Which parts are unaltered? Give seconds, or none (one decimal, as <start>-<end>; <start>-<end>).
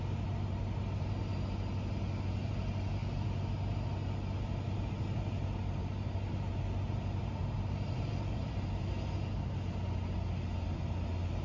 0.0-7.4; 8.5-11.4